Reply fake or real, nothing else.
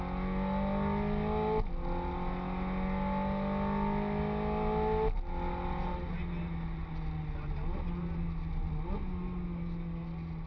real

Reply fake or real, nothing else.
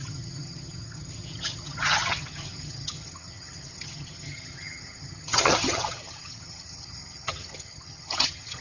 fake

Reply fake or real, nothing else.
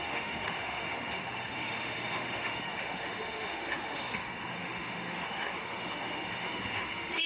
fake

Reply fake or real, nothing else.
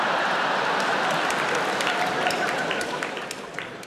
real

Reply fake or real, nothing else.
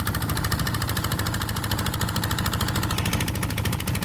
real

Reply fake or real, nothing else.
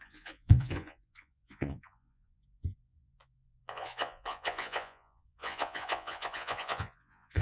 fake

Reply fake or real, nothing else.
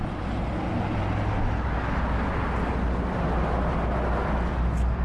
real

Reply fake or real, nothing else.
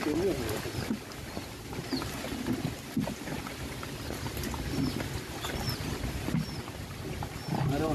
real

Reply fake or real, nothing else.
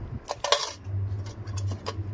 real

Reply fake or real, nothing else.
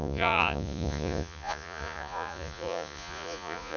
fake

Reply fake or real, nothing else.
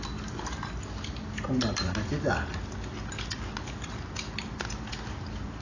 real